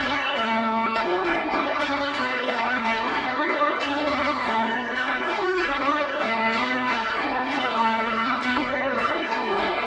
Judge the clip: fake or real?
fake